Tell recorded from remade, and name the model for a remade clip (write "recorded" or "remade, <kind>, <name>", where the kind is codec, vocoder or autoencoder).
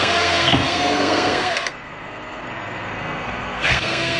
remade, codec, SNAC